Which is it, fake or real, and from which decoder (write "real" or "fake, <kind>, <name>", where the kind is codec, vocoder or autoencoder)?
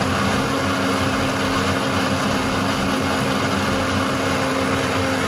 real